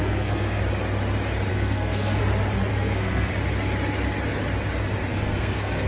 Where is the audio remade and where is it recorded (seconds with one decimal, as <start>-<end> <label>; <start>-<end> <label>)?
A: 0.0-0.6 remade; 0.6-1.5 recorded; 1.5-2.2 remade; 2.2-2.7 recorded; 2.7-3.3 remade; 3.3-5.1 recorded; 5.1-5.9 remade